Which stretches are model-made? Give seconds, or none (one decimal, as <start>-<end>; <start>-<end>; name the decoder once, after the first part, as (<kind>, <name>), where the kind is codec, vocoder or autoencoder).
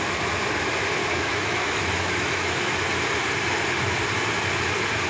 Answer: 1.0-2.9 (autoencoder, DAC-VAE)